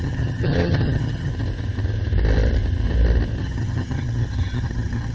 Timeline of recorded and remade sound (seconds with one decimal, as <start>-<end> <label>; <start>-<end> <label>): 0.0-1.3 remade; 1.3-3.4 recorded; 3.4-5.1 remade